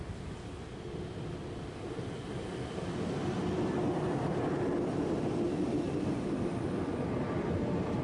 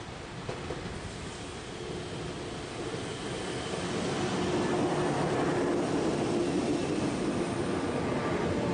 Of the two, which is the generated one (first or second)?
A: first